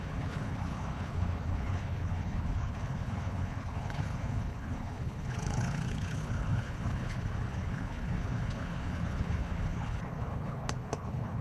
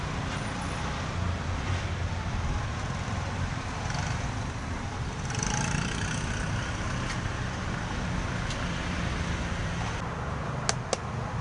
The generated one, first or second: first